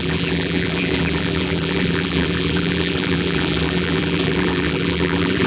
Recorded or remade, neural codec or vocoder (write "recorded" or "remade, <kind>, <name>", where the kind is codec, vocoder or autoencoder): remade, vocoder, BigVGAN v2